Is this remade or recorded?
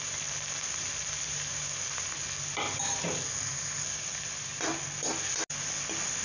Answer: recorded